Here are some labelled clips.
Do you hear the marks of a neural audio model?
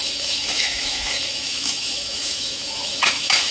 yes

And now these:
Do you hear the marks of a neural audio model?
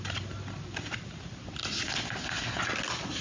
no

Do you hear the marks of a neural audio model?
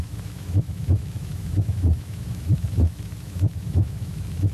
yes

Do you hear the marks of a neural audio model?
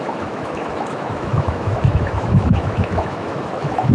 yes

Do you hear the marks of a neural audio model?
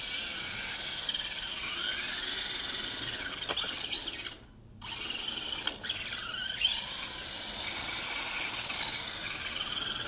no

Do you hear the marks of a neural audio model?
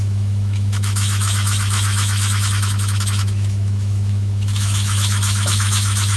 yes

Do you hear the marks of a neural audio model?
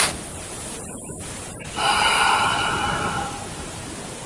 no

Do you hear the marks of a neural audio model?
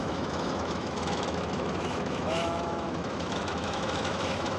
yes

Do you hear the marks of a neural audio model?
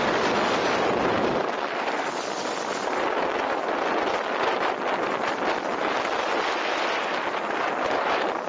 no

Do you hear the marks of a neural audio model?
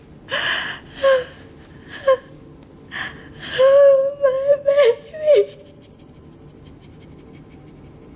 no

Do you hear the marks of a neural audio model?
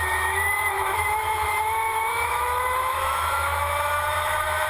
yes